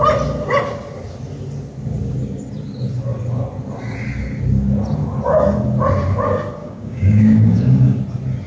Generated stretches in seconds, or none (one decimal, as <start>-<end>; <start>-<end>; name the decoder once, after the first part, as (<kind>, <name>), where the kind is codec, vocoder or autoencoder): 6.6-8.0 (codec, DAC)